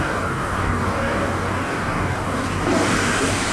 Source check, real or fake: fake